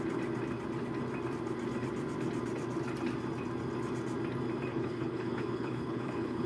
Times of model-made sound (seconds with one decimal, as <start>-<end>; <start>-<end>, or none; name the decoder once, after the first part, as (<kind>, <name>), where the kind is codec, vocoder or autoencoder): 4.7-6.5 (codec, HILCodec)